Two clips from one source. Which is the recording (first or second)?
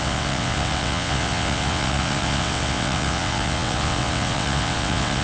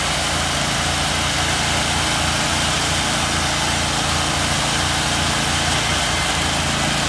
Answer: second